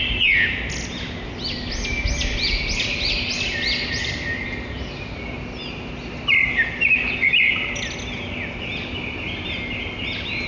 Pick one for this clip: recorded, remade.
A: recorded